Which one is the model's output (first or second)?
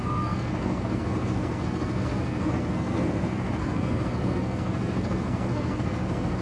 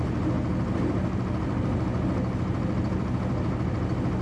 first